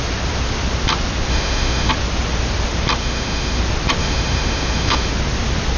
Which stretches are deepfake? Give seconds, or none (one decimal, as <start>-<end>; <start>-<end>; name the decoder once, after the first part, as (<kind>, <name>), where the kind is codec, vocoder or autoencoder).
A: 1.3-1.9 (autoencoder, DAC-VAE); 3.0-3.6; 4.0-5.1